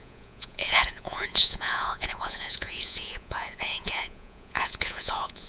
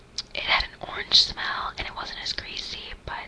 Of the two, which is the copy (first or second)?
first